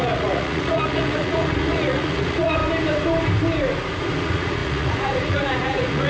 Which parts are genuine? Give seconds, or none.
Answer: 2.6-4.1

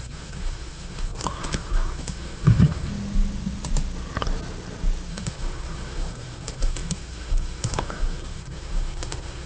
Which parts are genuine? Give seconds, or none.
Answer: 2.9-5.1